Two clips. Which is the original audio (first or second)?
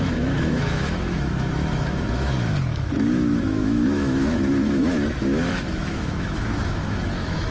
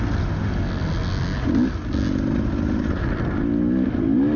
second